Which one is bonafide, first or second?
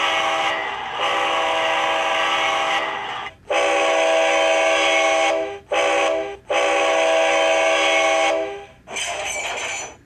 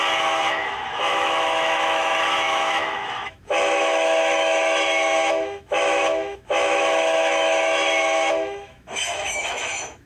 first